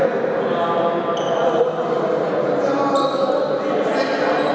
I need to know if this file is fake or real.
real